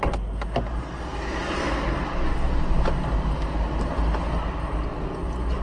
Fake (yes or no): no